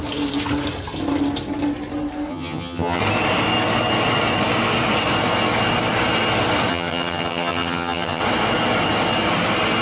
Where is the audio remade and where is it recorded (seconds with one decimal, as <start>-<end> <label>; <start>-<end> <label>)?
0.0-2.3 recorded; 2.3-3.0 remade; 3.0-6.7 recorded; 6.7-8.2 remade; 8.2-9.8 recorded